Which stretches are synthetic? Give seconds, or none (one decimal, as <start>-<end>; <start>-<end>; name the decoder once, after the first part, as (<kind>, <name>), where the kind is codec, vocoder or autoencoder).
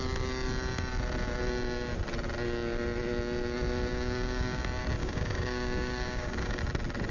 3.9-4.6 (codec, DAC); 5.0-6.6